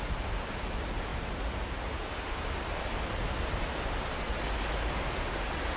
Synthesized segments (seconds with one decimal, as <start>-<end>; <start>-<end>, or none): none